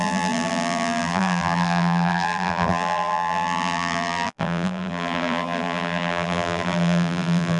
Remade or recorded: remade